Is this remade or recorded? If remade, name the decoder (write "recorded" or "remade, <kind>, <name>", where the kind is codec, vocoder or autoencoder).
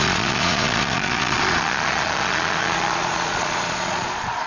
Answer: remade, vocoder, Vocos